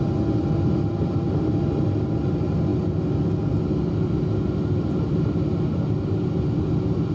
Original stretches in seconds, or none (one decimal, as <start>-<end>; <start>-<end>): 0.0-7.1